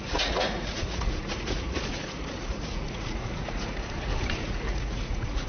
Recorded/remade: remade